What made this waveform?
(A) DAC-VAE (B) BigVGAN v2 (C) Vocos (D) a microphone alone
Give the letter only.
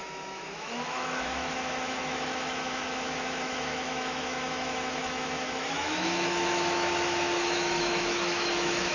A